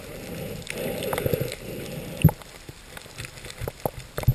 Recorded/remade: recorded